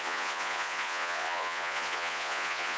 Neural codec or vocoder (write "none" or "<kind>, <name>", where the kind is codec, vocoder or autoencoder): vocoder, Vocos